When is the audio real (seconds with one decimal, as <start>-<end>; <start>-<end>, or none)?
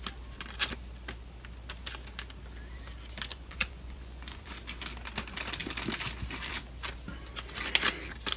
0.0-3.3; 4.5-8.4